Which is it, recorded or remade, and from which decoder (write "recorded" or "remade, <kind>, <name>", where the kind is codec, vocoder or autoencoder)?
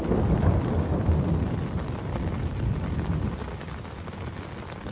recorded